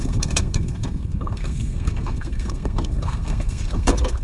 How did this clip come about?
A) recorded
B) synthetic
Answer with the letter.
B